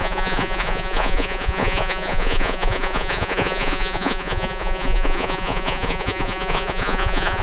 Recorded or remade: remade